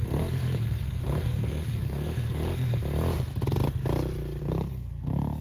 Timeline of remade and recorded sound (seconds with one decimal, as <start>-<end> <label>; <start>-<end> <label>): 0.0-2.8 remade; 2.8-4.4 recorded; 4.4-5.4 remade